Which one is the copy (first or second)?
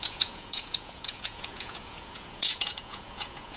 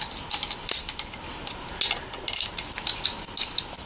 first